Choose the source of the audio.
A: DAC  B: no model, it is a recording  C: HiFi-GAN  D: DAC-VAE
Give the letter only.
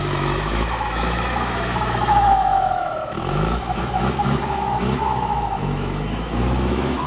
D